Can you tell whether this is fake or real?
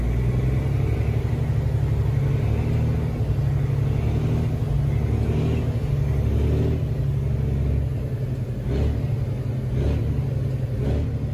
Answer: real